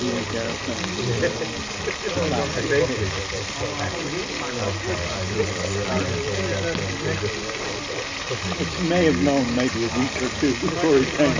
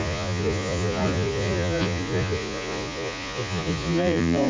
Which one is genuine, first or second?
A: first